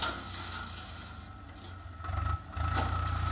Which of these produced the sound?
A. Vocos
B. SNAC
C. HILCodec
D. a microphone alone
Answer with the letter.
D